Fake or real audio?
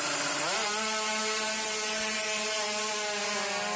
real